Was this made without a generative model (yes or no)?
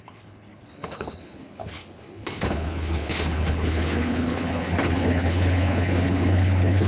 no